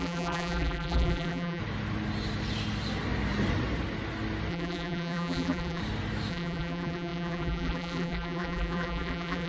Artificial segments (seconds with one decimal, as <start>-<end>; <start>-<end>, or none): 0.0-1.6; 4.5-5.8; 6.3-9.5